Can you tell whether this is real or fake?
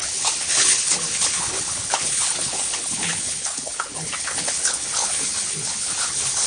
fake